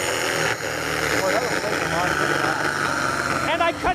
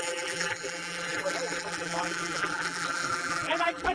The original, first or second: first